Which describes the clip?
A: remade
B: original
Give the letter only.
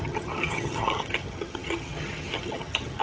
A